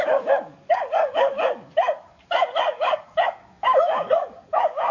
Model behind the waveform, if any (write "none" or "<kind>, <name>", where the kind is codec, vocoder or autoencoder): codec, DAC